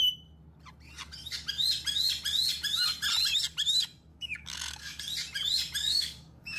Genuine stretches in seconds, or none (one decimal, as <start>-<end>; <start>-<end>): 0.0-4.1; 5.0-5.8